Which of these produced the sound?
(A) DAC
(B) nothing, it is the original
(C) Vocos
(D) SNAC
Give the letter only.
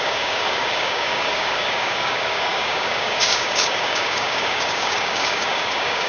A